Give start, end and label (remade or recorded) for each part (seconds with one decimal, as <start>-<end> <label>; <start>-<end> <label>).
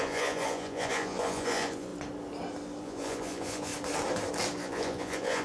0.0-1.9 remade; 1.9-2.8 recorded; 2.8-3.7 remade; 3.7-4.6 recorded; 4.6-5.4 remade